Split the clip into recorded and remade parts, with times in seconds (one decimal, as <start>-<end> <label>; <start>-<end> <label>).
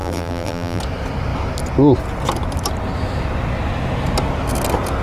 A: 0.0-0.8 remade; 0.8-5.0 recorded